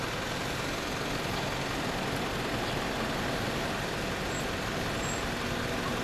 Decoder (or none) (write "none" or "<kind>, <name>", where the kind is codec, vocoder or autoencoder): none